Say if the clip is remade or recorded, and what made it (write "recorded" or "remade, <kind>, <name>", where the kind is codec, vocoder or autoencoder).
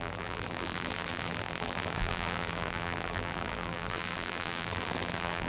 remade, vocoder, BigVGAN v2